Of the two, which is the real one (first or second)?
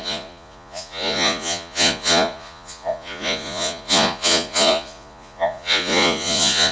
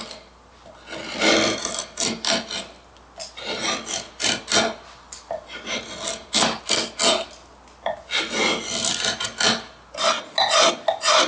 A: second